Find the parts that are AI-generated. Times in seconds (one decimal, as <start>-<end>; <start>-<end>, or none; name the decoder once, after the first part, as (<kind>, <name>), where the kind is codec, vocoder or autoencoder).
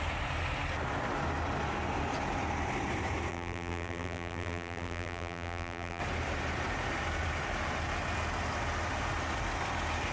3.3-6.0 (vocoder, BigVGAN v2)